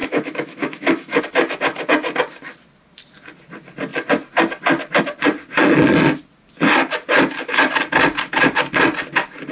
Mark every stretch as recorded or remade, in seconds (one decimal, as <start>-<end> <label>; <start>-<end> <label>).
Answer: 0.0-1.2 remade; 1.2-9.5 recorded